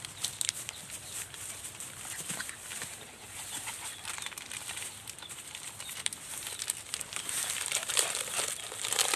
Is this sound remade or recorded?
remade